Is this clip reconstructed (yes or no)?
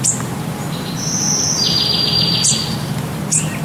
no